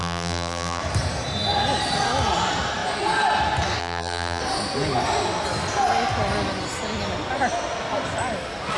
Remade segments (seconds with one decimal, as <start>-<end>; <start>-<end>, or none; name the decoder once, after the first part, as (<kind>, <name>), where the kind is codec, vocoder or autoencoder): 0.0-0.8 (vocoder, BigVGAN v2); 3.8-4.4